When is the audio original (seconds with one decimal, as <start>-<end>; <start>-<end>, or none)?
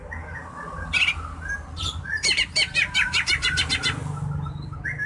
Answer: 0.0-2.1; 3.6-5.1